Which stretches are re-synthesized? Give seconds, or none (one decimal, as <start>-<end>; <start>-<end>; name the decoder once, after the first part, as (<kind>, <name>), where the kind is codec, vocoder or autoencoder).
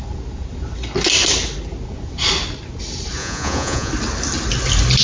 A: 3.2-3.9 (vocoder, Vocos)